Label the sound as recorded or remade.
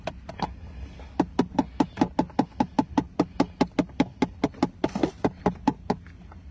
recorded